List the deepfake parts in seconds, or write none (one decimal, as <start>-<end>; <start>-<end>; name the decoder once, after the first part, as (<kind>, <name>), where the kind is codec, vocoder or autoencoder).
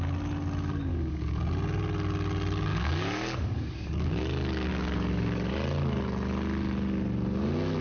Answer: 0.9-1.4 (codec, DAC); 2.7-4.1; 4.7-5.5